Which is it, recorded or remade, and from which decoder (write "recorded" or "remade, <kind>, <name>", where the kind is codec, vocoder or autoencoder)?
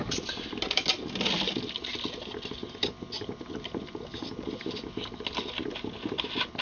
recorded